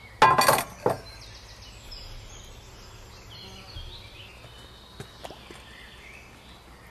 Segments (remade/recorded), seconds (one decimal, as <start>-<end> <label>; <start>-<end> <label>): 0.0-6.9 recorded